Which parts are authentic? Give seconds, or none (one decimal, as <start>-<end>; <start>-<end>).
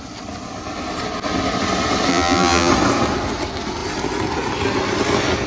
0.0-2.1; 2.7-5.5